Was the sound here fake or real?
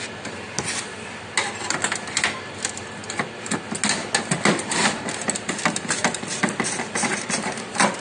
real